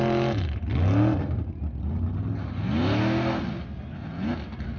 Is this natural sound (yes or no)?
yes